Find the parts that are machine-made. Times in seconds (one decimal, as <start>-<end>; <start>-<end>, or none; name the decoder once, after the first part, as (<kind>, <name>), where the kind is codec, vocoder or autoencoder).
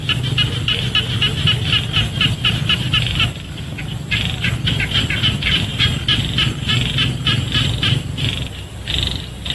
none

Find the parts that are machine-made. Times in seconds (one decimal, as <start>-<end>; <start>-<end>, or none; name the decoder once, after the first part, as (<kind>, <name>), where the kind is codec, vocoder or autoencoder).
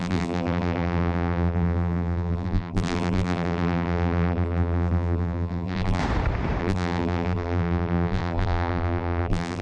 0.0-6.0 (vocoder, BigVGAN v2); 6.6-9.6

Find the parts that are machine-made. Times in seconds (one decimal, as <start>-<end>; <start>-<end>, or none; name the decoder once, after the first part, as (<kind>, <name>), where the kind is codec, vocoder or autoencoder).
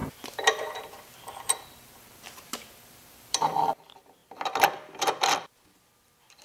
0.0-3.8 (vocoder, BigVGAN v2)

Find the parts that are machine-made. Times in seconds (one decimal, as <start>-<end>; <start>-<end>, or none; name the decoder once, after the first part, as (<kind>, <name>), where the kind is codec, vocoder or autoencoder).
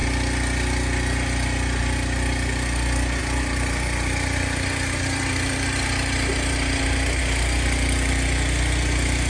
3.2-7.2 (vocoder, BigVGAN v2)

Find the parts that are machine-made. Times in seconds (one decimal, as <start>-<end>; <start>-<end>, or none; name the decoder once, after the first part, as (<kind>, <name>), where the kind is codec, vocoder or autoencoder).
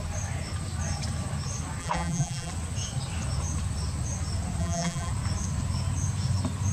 1.8-2.5 (vocoder, BigVGAN v2); 4.6-5.1